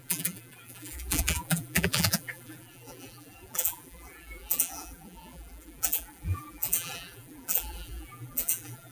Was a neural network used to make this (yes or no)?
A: yes